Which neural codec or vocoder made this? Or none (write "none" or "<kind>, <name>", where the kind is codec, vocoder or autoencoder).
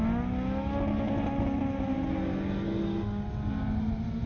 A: none